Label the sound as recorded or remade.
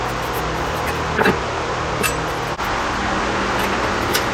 recorded